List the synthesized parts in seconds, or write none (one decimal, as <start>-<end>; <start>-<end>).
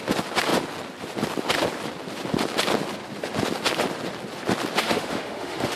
4.8-5.8